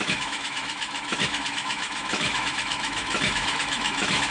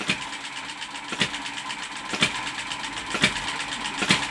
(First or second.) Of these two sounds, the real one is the second